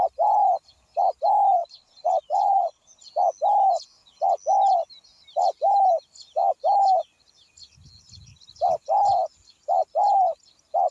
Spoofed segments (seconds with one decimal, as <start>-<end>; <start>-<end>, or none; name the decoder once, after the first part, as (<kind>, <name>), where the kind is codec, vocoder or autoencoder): 1.6-3.0 (vocoder, Vocos)